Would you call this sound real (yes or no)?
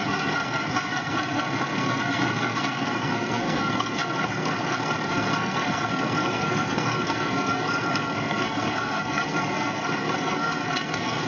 no